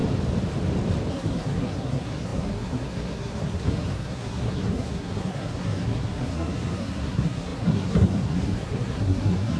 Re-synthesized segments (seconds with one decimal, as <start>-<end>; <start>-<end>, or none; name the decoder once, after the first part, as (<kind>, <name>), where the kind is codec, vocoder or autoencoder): 1.1-9.6 (codec, SNAC)